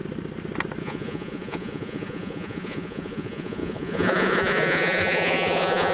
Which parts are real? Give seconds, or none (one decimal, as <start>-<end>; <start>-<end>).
0.0-0.8